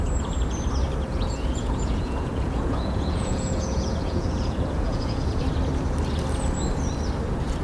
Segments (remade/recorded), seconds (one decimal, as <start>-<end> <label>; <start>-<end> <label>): 0.0-1.1 recorded; 1.1-5.4 remade; 5.4-7.6 recorded